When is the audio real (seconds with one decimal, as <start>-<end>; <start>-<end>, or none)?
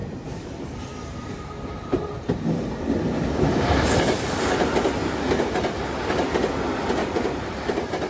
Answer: 0.0-7.0; 7.6-8.1